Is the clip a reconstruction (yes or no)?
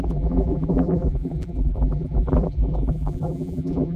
yes